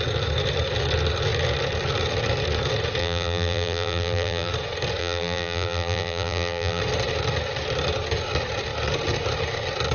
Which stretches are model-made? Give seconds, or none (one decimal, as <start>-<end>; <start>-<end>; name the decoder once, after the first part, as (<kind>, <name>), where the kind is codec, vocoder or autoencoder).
3.0-4.5 (vocoder, BigVGAN v2); 5.0-6.8